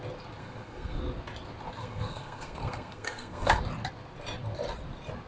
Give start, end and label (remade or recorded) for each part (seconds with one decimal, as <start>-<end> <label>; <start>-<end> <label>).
0.0-0.4 recorded; 0.4-1.0 remade; 1.0-1.8 recorded; 1.8-3.6 remade; 3.6-5.3 recorded